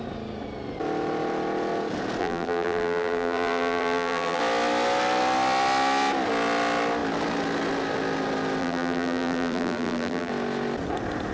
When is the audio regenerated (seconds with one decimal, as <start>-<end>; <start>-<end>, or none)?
2.2-4.4; 8.6-10.3

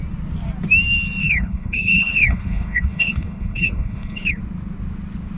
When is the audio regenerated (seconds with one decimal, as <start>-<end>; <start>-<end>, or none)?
1.2-4.4

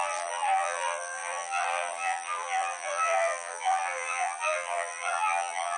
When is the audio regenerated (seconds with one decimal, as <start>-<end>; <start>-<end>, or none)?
0.0-5.8

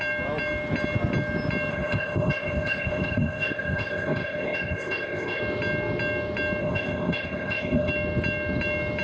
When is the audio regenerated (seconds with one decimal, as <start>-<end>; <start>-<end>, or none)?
1.7-5.4; 6.6-7.9

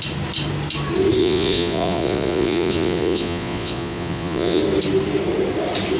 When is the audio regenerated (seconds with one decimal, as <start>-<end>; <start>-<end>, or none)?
1.2-4.6

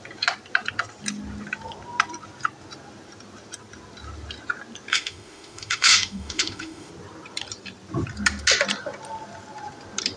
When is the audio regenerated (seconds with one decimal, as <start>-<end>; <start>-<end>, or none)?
4.9-6.9

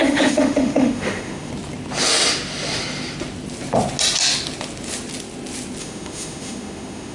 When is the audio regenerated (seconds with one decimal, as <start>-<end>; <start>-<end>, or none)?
0.0-1.5; 5.8-7.1